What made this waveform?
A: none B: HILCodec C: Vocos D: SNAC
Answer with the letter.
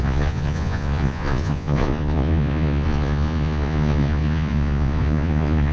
C